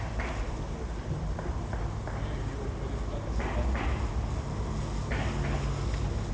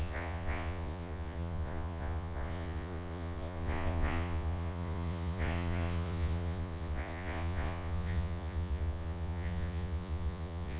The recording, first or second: first